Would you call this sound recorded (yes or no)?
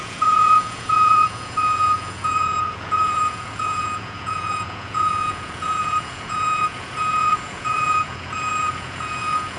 no